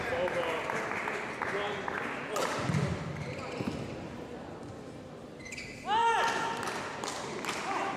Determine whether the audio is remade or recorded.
recorded